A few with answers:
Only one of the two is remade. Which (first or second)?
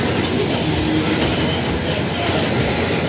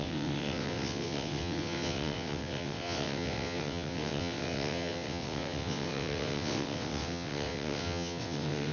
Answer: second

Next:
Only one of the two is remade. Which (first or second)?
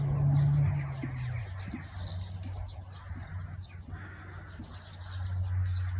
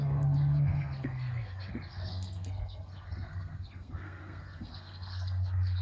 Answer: second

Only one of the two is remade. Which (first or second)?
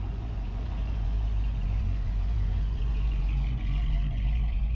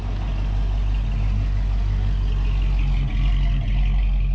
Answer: first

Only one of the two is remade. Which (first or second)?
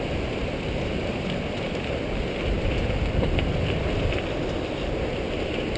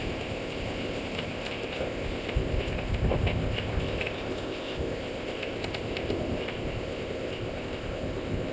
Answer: second